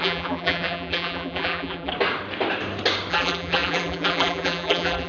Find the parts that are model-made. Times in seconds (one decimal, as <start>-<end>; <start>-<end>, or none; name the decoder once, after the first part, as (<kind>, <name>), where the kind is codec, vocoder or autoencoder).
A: 0.0-1.9 (vocoder, BigVGAN v2); 3.1-5.1